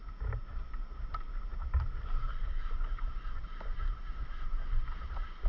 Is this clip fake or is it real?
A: real